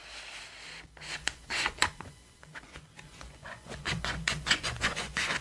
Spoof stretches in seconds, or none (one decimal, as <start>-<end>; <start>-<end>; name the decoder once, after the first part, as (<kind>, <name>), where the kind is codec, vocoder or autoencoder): 1.0-5.4 (vocoder, Vocos)